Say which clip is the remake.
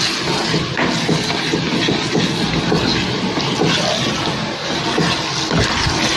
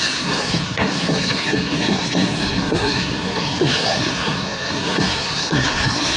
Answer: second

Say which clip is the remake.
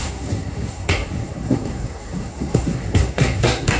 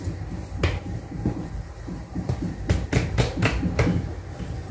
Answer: first